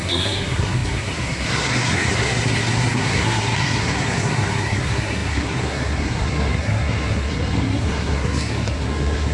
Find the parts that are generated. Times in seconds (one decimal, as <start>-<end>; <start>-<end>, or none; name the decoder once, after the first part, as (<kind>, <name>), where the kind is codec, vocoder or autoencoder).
0.0-9.3 (codec, SNAC)